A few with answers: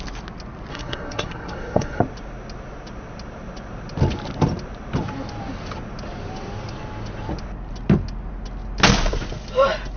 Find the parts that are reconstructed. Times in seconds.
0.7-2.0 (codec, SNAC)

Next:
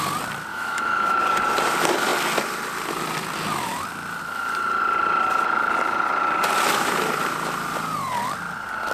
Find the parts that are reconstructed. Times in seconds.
0.5-1.2 (autoencoder, DAC-VAE)

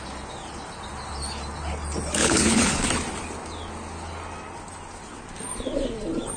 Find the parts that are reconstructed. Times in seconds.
2.2-2.9 (codec, HILCodec)

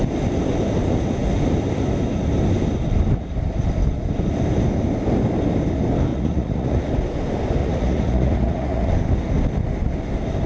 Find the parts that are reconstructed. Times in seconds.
6.1-6.8 (vocoder, Vocos); 7.6-8.9

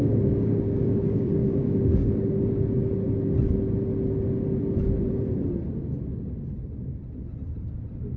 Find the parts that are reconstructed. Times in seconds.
0.0-2.6 (codec, DAC)